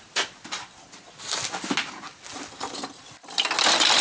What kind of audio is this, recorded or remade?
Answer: recorded